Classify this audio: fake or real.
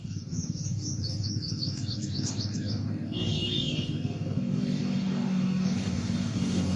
fake